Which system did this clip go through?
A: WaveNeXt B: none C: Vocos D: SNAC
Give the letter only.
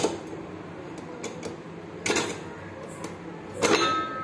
B